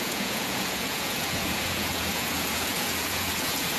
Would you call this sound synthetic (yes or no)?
yes